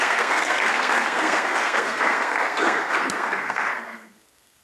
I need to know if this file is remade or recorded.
remade